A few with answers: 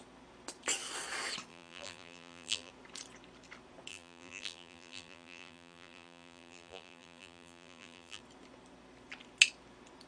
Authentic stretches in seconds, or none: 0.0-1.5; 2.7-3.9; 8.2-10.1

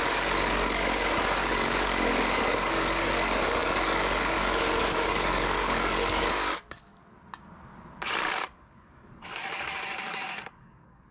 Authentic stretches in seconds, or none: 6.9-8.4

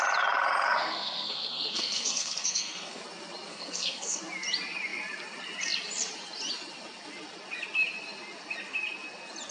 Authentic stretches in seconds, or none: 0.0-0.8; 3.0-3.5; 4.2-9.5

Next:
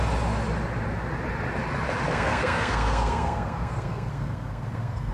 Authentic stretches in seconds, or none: 0.0-2.1

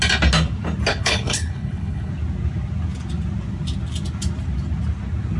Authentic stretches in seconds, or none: 0.0-0.9; 2.1-5.4

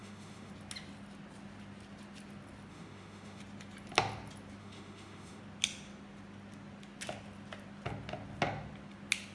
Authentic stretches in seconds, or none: 0.5-2.7; 3.4-4.6; 5.4-9.3

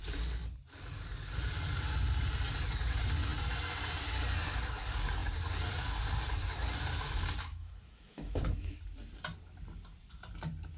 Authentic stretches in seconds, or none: 0.0-7.5; 8.8-10.8

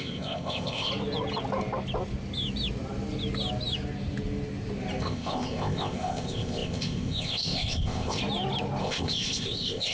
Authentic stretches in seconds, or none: 0.9-5.0; 8.2-8.8